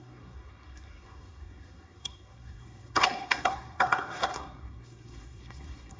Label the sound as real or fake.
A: fake